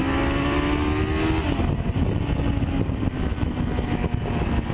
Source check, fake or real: real